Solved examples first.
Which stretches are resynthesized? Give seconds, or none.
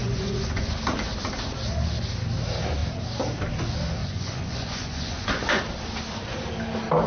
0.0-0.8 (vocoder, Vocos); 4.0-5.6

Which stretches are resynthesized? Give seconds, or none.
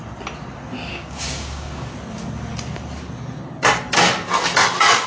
0.9-1.9 (codec, DAC)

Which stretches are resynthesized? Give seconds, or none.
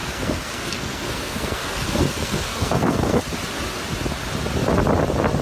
0.0-3.2 (codec, SNAC)